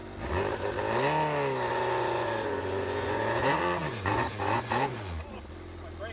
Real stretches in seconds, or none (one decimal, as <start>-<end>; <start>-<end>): 0.0-1.7; 5.4-6.1